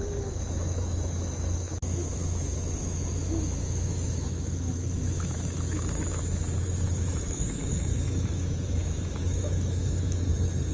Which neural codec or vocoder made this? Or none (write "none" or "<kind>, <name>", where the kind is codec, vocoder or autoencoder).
autoencoder, DAC-VAE